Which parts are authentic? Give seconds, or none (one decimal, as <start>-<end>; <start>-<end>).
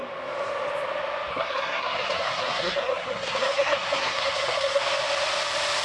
0.0-1.3; 4.8-5.8